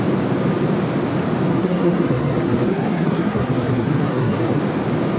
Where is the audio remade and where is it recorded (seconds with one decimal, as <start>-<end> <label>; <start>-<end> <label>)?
0.0-1.5 recorded; 1.5-4.6 remade; 4.6-5.2 recorded